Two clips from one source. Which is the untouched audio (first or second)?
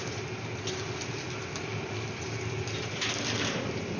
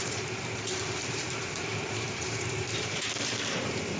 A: first